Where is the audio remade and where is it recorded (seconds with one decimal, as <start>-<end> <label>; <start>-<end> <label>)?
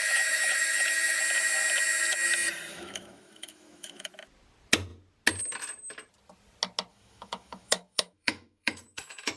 0.0-1.2 remade; 1.2-2.7 recorded; 2.7-4.1 remade; 4.1-6.9 recorded; 6.9-9.4 remade